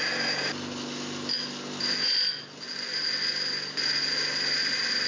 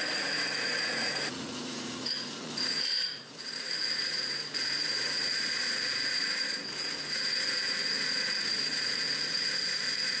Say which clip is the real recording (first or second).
first